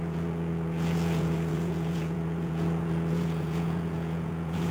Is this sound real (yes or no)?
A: no